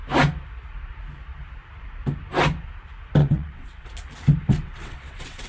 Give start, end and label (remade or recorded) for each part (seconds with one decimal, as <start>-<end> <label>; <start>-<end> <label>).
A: 0.0-3.2 recorded; 3.2-3.9 remade; 3.9-4.4 recorded; 4.4-5.5 remade

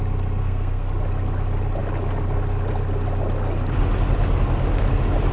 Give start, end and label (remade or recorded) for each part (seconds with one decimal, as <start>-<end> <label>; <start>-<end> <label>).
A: 0.0-0.4 recorded; 0.4-0.9 remade; 0.9-5.3 recorded

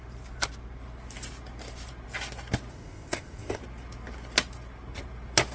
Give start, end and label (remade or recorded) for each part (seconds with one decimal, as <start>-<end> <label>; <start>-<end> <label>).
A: 0.0-2.7 recorded; 2.7-3.6 remade; 3.6-5.5 recorded

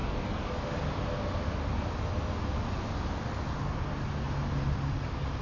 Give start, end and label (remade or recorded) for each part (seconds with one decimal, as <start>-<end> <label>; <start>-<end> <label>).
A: 0.0-0.8 remade; 0.8-5.4 recorded